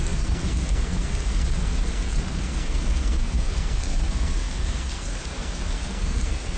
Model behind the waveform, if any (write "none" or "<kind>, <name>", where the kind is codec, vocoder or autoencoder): codec, SNAC